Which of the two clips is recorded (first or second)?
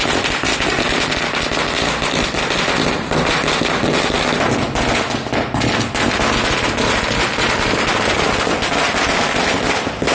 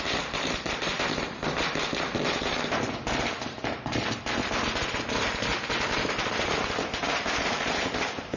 first